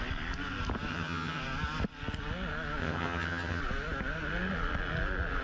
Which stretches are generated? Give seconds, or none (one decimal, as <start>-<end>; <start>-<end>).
0.9-1.4; 2.8-3.6